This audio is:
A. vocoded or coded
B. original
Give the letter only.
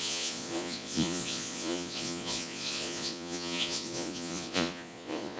A